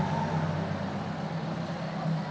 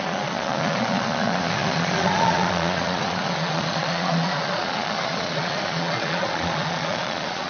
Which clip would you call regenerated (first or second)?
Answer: second